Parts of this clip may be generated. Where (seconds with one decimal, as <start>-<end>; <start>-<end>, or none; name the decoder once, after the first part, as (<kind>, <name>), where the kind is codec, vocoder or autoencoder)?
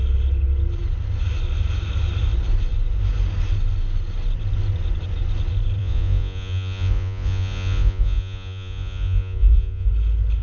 5.8-9.9 (vocoder, Vocos)